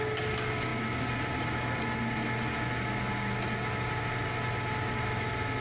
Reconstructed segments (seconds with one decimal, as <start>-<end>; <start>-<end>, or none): none